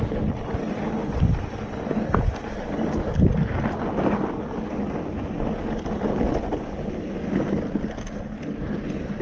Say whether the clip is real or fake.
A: real